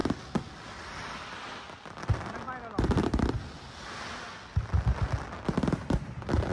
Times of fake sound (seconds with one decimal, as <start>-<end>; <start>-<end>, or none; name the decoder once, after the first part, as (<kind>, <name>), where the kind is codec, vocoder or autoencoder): none